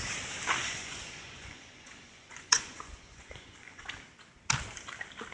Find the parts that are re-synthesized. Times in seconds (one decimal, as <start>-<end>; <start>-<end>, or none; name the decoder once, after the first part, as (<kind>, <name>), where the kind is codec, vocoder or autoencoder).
0.6-3.8 (vocoder, Vocos)